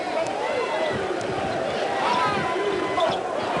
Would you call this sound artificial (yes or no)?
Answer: no